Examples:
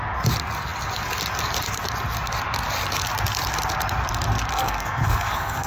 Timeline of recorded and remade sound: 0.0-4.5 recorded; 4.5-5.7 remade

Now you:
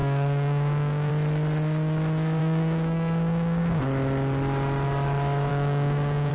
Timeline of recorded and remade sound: 0.0-1.1 remade; 1.1-2.4 recorded; 2.4-3.8 remade; 3.8-5.5 recorded; 5.5-6.3 remade

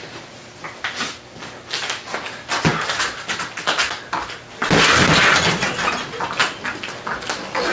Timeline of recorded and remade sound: 0.0-7.7 recorded

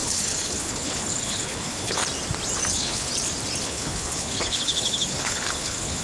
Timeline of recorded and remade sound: 0.0-2.0 remade; 2.0-2.7 recorded; 2.7-3.1 remade; 3.1-3.6 recorded; 3.6-6.0 remade